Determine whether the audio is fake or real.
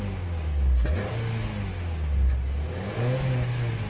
real